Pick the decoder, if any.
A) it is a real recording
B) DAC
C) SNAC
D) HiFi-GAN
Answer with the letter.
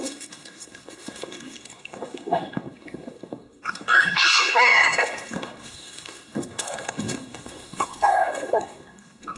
C